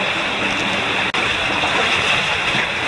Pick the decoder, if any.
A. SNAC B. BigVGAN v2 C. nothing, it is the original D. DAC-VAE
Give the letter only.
C